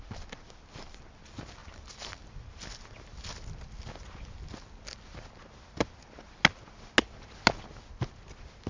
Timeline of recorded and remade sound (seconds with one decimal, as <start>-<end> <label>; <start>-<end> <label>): 0.0-1.6 recorded; 1.6-2.3 remade; 2.3-8.7 recorded

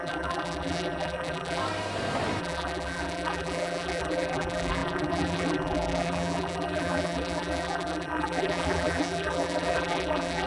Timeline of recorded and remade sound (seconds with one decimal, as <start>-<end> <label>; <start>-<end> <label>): 0.0-1.6 remade; 1.6-2.4 recorded; 2.4-10.5 remade

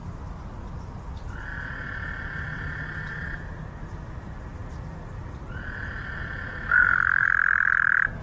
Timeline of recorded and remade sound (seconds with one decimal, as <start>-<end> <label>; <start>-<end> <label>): 0.0-0.6 recorded; 0.6-1.5 remade; 1.5-2.8 recorded; 2.8-4.6 remade; 4.6-5.3 recorded; 5.3-8.2 remade

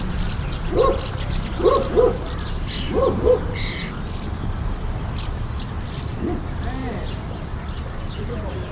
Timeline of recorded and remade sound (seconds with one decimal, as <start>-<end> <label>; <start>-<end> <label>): 0.0-8.7 remade